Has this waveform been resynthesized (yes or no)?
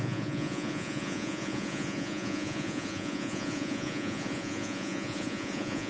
yes